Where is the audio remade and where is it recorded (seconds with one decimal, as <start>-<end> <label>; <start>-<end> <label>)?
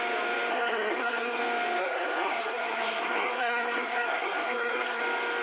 0.0-0.5 recorded; 0.5-1.4 remade; 1.4-1.8 recorded; 1.8-5.0 remade; 5.0-5.4 recorded